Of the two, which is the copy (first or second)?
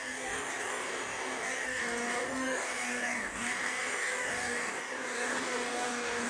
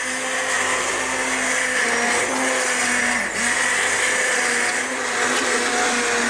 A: first